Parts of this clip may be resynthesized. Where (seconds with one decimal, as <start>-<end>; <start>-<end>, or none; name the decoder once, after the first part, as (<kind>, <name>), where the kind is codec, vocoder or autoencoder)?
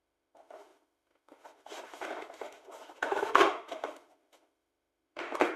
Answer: 0.0-5.6 (autoencoder, DAC-VAE)